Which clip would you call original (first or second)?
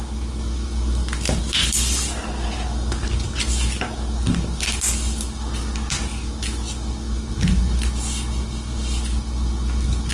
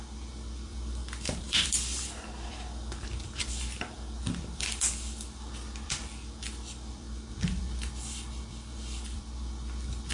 first